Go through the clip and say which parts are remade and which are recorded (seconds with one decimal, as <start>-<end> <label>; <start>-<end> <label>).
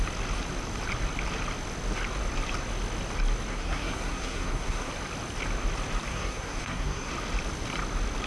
0.0-3.5 recorded; 3.5-4.9 remade; 4.9-6.1 recorded; 6.1-7.1 remade; 7.1-8.3 recorded